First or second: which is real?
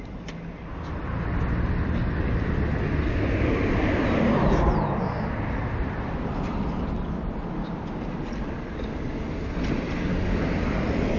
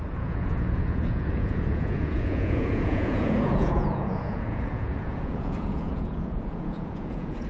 first